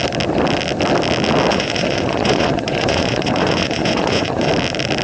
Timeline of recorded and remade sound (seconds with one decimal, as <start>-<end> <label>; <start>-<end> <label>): 0.0-1.5 recorded; 1.5-4.5 remade; 4.5-5.0 recorded